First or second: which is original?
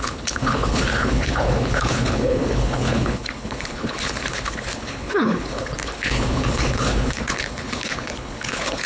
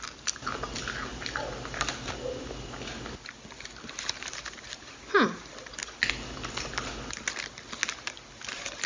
second